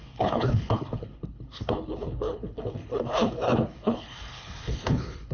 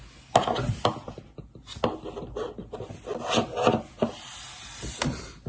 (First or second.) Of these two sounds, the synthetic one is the first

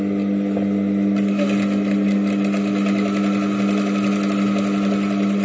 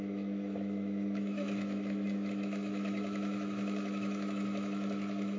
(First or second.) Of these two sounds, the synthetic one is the second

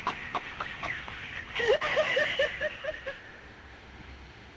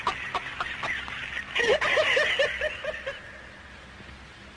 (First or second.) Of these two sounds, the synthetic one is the first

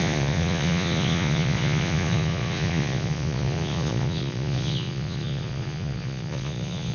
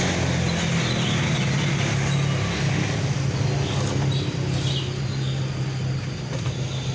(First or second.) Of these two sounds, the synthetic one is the first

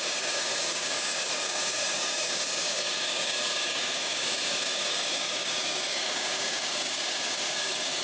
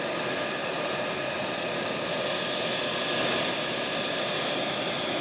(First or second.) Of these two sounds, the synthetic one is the first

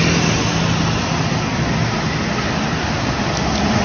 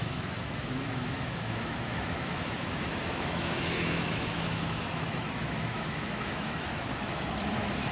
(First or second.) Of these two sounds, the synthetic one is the second